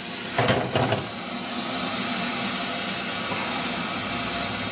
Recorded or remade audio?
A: recorded